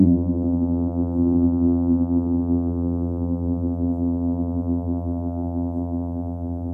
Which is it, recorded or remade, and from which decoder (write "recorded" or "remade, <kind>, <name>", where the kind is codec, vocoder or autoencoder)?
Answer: remade, vocoder, BigVGAN v2